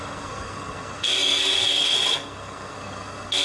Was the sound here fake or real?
fake